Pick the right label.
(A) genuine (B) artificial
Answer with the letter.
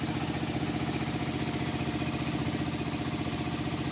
A